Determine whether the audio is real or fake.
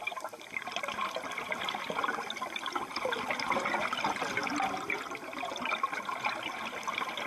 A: real